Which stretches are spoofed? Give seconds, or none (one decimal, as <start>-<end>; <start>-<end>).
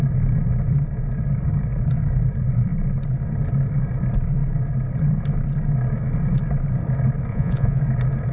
7.3-7.8